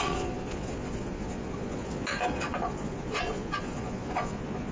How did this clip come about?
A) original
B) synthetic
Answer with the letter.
B